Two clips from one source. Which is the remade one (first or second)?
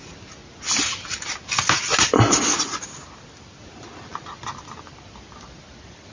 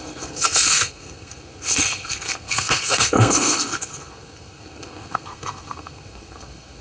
second